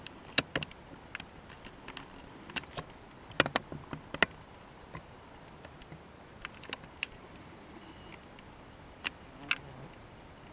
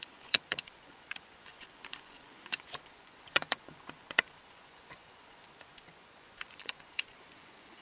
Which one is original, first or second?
first